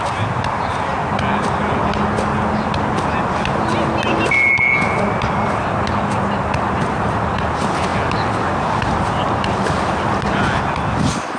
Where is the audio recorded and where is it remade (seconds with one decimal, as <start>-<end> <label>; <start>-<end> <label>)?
0.0-11.4 recorded